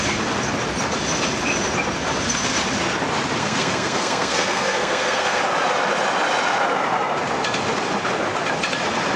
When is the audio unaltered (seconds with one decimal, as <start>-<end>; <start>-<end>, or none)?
0.0-3.4; 5.4-9.2